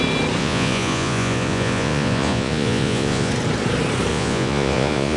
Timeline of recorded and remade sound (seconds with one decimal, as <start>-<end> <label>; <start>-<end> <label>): 0.0-0.4 recorded; 0.4-3.3 remade; 3.3-4.1 recorded; 4.1-5.2 remade